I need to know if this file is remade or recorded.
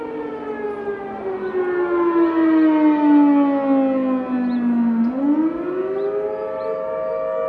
recorded